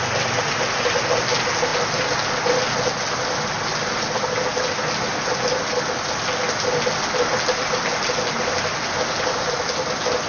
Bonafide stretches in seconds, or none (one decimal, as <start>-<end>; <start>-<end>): 0.0-10.3